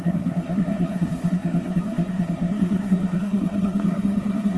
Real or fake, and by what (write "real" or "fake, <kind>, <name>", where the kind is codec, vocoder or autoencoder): fake, codec, SNAC